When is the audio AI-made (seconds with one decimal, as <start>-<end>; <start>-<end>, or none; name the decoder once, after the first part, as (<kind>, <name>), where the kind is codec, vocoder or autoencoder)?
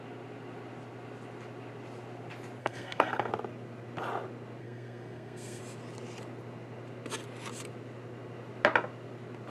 2.6-3.3 (codec, SNAC); 4.6-5.6